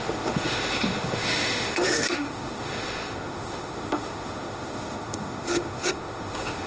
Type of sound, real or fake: fake